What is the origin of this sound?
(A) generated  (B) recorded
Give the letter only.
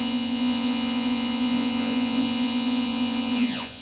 A